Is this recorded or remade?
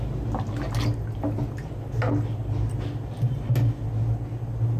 recorded